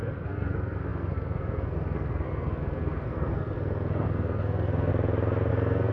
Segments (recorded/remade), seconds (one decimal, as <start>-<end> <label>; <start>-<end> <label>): 0.0-4.9 remade; 4.9-5.5 recorded; 5.5-5.9 remade